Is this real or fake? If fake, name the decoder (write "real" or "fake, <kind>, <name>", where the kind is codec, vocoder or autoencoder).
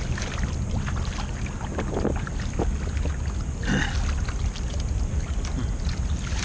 real